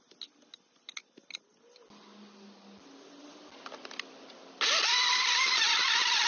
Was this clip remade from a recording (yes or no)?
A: no